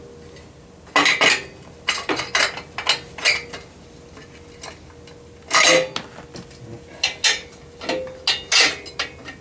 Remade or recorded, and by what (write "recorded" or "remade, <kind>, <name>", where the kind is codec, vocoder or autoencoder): recorded